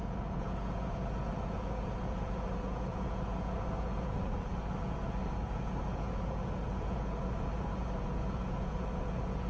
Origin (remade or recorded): remade